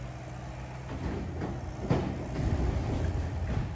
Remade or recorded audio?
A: recorded